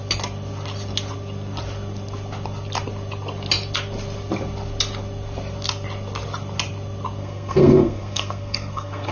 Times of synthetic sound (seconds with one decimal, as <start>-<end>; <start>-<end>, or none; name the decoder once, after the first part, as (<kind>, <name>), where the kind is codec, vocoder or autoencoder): 7.2-9.1 (codec, SNAC)